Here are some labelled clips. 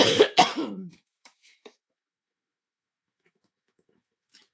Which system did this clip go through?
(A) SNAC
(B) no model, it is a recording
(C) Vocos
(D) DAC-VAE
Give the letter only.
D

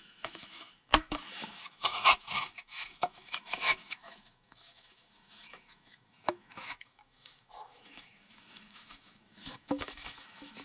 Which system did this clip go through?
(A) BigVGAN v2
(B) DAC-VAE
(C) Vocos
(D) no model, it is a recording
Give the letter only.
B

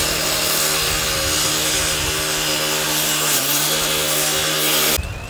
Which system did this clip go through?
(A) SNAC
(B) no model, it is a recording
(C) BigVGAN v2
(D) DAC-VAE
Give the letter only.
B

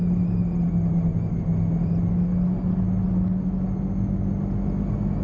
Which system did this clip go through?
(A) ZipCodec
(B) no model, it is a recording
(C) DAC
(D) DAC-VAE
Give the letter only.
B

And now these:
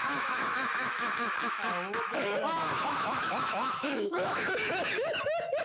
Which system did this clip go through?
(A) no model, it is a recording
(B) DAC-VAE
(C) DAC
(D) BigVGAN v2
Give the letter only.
B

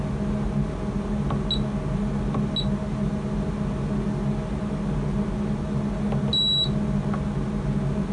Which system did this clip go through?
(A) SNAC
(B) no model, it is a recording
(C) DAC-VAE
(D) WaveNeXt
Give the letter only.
B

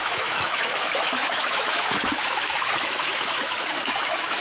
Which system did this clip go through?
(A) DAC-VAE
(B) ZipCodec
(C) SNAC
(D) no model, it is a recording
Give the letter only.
A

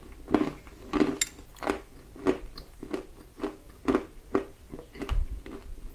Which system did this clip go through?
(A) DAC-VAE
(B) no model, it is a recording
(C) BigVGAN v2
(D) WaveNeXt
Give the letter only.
B